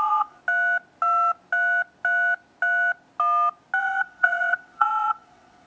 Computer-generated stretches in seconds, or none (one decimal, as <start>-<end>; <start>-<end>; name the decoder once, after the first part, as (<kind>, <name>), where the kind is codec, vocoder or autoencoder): 0.0-0.4 (vocoder, WaveNeXt); 3.8-5.7